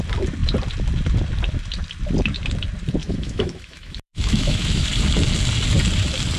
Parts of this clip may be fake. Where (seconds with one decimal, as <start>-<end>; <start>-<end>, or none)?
3.0-4.9